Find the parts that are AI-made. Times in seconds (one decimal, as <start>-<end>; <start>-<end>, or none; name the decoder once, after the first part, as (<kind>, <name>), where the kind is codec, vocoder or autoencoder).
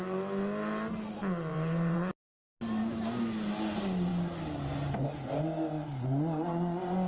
1.5-2.1 (vocoder, BigVGAN v2)